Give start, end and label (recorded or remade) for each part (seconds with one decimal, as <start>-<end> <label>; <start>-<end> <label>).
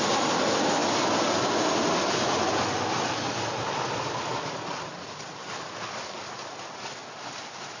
0.0-7.8 recorded